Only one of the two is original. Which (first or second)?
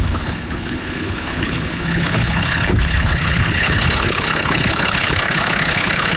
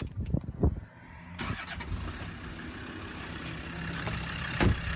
second